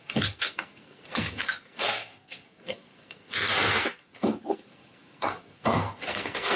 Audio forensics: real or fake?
fake